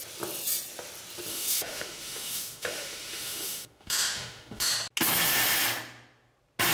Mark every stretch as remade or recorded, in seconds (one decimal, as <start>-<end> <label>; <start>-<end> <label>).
0.0-1.3 recorded; 1.3-4.7 remade; 4.7-6.7 recorded